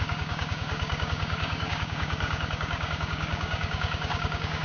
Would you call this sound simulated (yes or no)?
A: yes